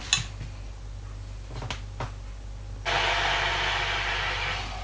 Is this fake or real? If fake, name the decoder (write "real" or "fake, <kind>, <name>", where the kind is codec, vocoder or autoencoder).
real